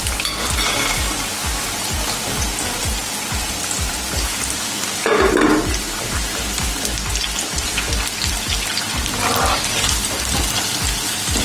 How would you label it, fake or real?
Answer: fake